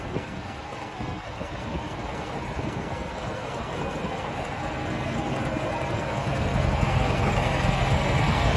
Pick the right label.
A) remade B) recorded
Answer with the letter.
A